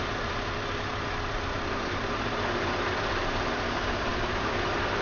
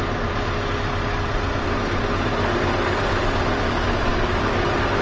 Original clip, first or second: second